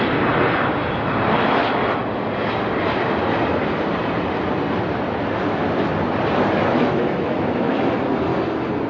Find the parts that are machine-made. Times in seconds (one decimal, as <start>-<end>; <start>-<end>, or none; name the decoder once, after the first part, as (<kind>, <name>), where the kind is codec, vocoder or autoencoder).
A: 6.7-7.9 (autoencoder, DAC-VAE)